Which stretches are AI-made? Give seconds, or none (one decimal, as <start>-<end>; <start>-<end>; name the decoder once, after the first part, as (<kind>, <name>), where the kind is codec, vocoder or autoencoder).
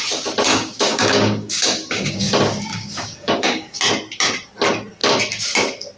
0.5-2.3 (codec, DAC); 2.7-3.8